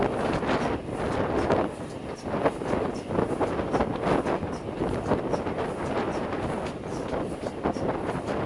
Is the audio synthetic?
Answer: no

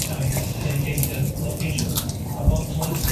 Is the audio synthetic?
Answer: no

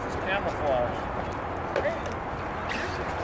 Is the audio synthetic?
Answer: no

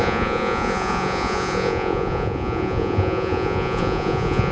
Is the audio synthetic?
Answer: yes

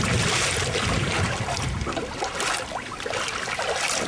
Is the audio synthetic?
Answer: no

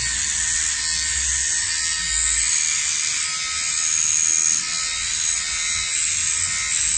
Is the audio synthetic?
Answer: no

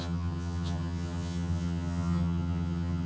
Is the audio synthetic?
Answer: yes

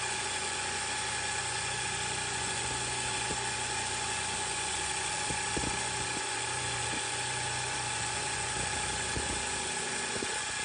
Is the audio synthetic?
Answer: yes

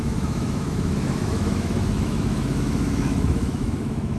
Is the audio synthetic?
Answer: yes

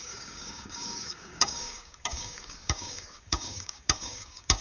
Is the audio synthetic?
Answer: yes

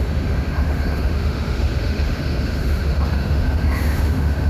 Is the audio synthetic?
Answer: yes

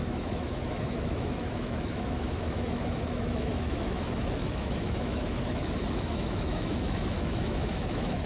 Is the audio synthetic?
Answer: yes